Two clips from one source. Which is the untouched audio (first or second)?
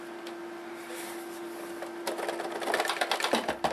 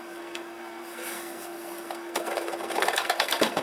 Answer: first